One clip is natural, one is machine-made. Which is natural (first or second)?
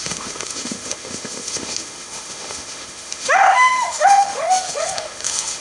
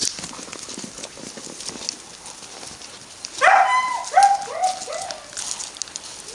second